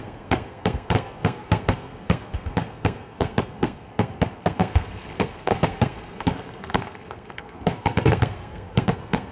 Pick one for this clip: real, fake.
fake